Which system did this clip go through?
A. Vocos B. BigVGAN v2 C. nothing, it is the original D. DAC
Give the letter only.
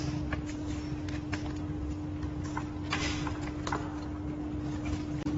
C